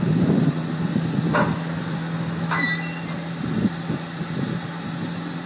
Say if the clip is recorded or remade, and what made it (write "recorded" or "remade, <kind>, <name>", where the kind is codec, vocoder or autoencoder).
recorded